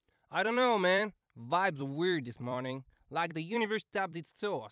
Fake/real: fake